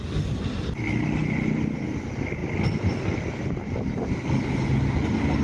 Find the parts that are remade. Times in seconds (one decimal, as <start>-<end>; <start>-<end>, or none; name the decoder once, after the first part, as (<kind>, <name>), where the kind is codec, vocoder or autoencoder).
none